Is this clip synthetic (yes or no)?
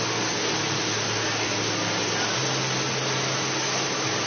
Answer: no